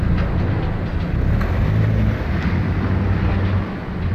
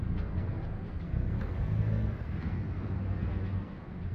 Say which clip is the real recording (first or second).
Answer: first